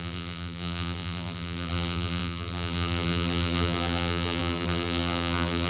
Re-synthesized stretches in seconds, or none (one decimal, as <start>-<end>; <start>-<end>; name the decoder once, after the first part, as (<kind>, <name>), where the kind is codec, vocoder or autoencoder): 0.0-5.7 (vocoder, BigVGAN v2)

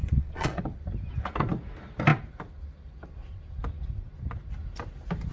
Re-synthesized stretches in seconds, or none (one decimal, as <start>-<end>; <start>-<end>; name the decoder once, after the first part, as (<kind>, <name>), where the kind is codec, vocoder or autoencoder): 0.0-0.6 (vocoder, Vocos)

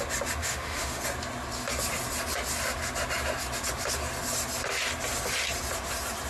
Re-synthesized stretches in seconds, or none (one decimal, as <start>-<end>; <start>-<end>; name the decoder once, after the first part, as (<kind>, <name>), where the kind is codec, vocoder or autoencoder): 0.4-1.0 (autoencoder, DAC-VAE)

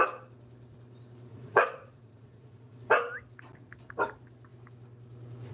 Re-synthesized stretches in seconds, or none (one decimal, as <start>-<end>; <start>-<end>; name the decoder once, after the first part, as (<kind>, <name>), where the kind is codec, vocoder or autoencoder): 1.3-2.8 (vocoder, Vocos)

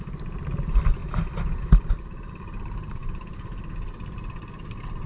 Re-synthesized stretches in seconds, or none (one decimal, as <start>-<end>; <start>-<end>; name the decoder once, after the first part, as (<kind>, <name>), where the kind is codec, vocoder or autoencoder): none